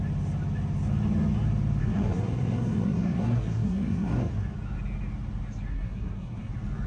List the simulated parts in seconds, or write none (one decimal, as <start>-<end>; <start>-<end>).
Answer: 1.8-4.3; 5.7-6.5